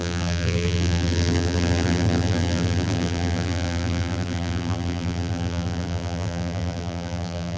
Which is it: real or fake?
fake